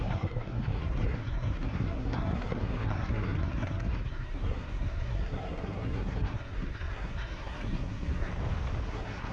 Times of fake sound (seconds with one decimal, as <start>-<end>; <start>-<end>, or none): 0.0-8.3; 8.9-9.3